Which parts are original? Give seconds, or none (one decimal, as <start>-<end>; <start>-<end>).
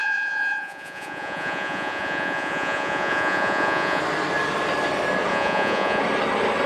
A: 4.0-5.3; 6.0-6.7